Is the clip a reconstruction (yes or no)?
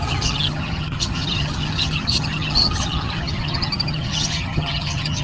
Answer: yes